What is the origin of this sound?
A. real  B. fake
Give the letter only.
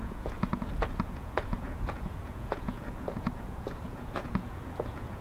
B